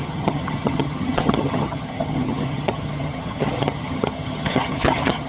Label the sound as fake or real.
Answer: fake